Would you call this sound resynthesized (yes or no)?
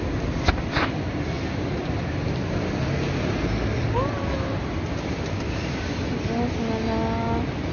no